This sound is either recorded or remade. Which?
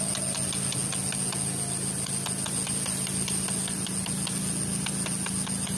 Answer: recorded